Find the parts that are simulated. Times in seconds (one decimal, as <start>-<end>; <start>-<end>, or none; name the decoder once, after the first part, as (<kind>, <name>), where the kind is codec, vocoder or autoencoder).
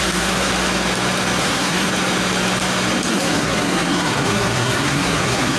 0.0-0.5 (codec, SNAC); 1.4-1.9; 3.1-5.6